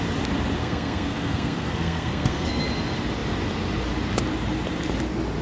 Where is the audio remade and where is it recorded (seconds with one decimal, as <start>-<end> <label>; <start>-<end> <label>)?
0.0-0.6 recorded; 0.6-2.6 remade; 2.6-5.4 recorded